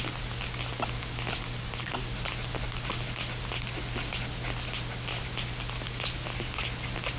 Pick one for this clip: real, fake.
real